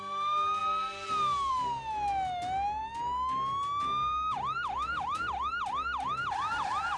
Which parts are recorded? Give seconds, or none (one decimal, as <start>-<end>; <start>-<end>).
0.0-7.0